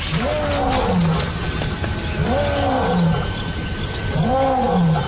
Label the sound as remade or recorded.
recorded